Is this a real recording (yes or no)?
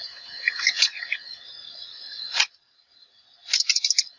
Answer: yes